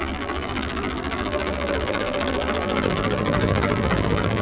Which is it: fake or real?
fake